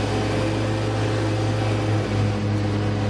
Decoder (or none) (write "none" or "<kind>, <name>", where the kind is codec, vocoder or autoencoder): none